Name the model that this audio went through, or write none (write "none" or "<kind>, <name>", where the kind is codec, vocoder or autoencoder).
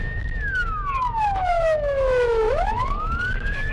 autoencoder, DAC-VAE